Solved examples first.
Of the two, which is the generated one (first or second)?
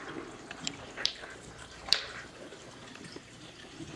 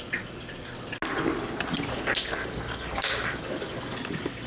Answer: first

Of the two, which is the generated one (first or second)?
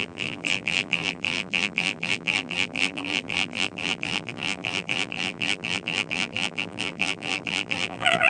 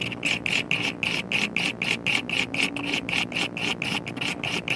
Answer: first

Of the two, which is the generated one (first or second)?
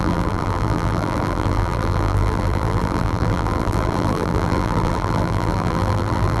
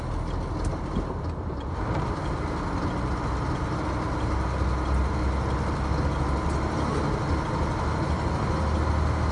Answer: first